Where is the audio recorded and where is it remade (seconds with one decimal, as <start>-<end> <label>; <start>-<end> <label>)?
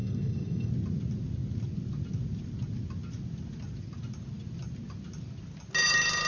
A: 0.0-0.7 remade; 0.7-6.3 recorded